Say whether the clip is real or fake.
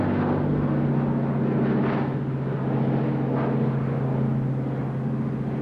real